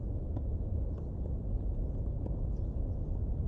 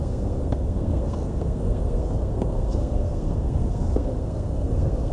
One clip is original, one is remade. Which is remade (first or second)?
second